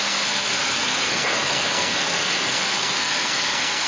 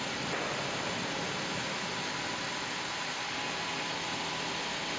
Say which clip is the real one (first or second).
second